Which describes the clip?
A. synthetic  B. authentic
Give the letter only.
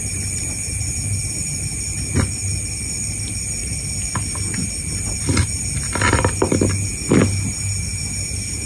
B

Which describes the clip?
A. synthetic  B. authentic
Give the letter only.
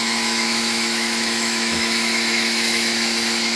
A